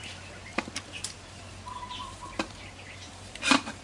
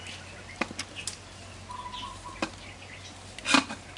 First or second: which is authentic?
second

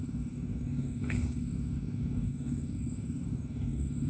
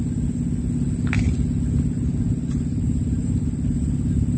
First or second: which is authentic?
second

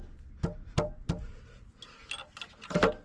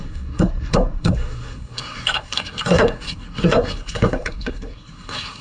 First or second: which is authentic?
first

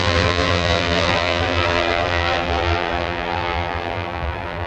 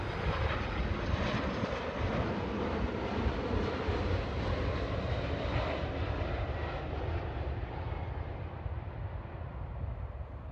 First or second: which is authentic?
second